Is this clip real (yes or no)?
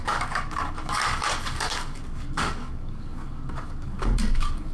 no